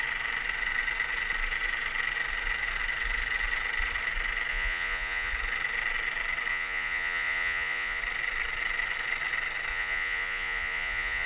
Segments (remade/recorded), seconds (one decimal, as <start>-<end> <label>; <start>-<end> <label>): 0.0-4.5 recorded; 4.5-5.3 remade; 5.3-6.5 recorded; 6.5-8.0 remade; 8.0-9.7 recorded; 9.7-11.3 remade